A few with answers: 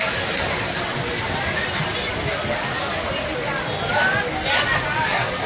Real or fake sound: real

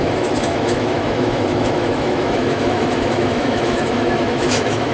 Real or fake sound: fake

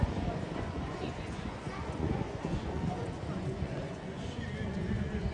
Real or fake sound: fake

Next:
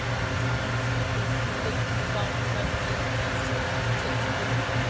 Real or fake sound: real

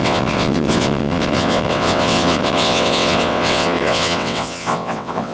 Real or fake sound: fake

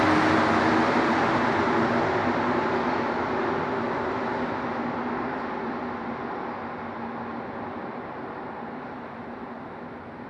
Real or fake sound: real